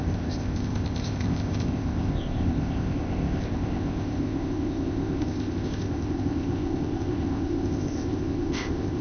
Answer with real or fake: fake